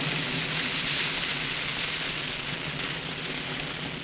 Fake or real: real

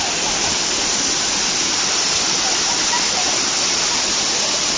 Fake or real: real